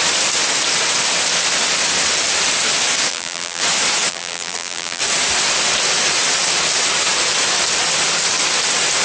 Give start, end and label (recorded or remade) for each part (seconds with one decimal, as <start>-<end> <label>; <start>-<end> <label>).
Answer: 0.0-3.1 recorded; 3.1-3.6 remade; 3.6-4.1 recorded; 4.1-5.0 remade; 5.0-9.0 recorded